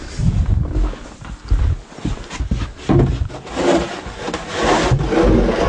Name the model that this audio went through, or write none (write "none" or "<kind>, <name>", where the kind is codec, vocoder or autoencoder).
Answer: none